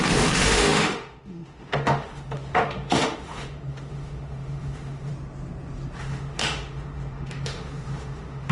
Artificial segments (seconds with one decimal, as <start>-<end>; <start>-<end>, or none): 0.0-5.1; 6.0-8.5